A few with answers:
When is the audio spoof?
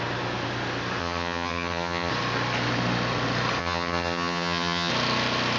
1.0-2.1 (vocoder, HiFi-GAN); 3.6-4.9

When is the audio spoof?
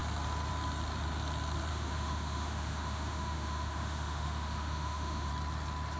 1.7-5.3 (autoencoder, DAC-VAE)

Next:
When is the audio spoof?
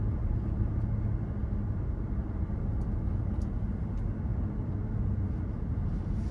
none